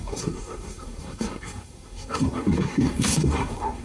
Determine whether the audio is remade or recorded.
remade